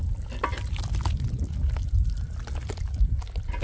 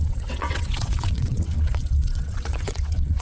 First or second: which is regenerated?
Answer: second